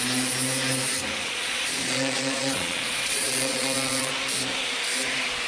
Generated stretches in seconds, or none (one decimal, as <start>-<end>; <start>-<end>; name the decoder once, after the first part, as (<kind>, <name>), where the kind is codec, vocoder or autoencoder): 1.2-4.1 (vocoder, Vocos)